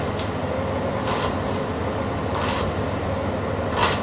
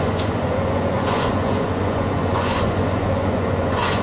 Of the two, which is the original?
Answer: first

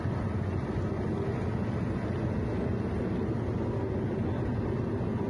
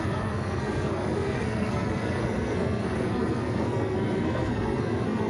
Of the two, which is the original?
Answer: first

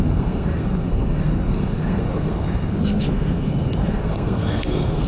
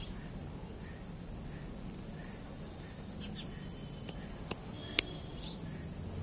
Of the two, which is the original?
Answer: second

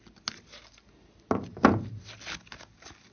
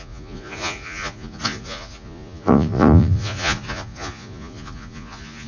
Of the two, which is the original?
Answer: first